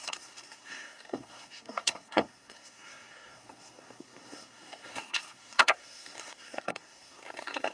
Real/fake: fake